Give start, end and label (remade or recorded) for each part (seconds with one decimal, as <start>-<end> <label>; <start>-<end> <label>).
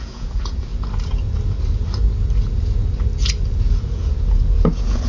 0.0-0.7 remade; 0.7-3.8 recorded; 3.8-5.1 remade